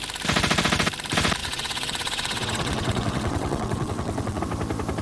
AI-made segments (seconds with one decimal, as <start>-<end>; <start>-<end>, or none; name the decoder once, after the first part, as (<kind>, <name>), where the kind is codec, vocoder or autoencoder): 1.4-4.4 (vocoder, WaveNeXt)